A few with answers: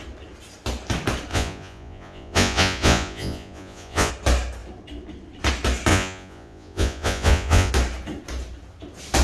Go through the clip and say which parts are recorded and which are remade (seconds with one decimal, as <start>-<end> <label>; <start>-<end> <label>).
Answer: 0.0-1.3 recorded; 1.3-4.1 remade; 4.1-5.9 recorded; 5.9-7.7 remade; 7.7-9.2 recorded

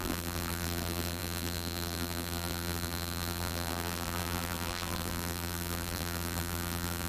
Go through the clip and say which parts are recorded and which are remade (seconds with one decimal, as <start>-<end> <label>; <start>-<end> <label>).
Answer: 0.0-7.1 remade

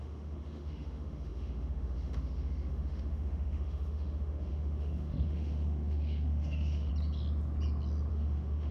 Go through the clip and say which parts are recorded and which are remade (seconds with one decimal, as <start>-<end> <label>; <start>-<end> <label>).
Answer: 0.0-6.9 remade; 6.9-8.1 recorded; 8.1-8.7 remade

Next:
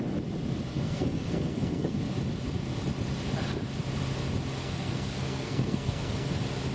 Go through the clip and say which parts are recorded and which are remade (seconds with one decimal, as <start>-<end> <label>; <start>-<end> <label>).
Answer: 0.0-0.7 recorded; 0.7-2.0 remade; 2.0-4.6 recorded; 4.6-6.3 remade; 6.3-6.7 recorded

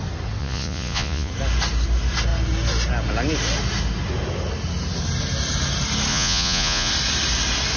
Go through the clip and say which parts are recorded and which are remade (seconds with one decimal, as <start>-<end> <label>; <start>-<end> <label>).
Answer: 0.0-0.4 recorded; 0.4-1.3 remade; 1.3-6.1 recorded; 6.1-6.9 remade; 6.9-7.8 recorded

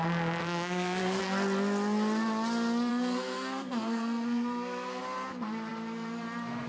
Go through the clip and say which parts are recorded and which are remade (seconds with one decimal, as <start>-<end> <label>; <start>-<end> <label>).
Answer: 0.0-0.4 recorded; 0.4-1.2 remade; 1.2-2.9 recorded; 2.9-5.0 remade; 5.0-6.7 recorded

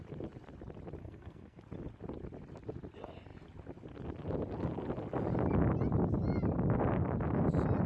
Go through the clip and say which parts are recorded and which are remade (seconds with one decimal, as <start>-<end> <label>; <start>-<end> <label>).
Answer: 0.0-1.0 recorded; 1.0-1.6 remade; 1.6-7.9 recorded